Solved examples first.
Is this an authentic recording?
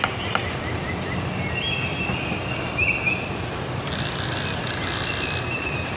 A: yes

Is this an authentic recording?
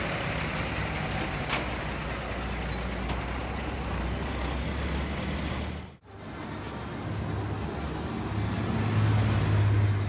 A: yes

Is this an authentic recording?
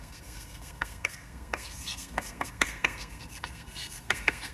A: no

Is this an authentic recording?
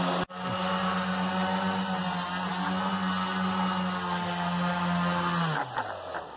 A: yes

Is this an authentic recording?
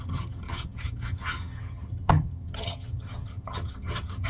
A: no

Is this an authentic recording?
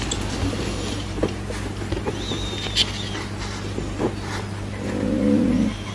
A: yes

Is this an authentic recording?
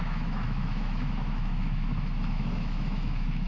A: no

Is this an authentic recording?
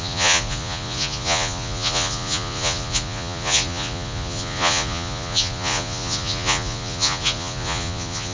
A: no